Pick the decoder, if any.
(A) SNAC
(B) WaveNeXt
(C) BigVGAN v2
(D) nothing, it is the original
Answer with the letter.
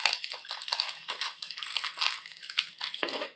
A